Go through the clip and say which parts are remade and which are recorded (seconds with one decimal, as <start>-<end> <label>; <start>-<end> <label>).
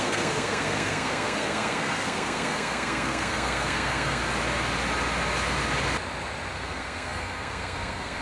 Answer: 0.0-4.2 remade; 4.2-6.5 recorded; 6.5-8.2 remade